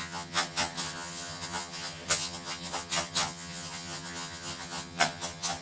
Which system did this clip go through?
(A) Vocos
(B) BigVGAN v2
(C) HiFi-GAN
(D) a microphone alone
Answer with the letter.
C